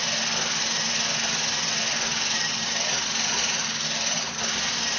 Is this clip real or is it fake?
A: real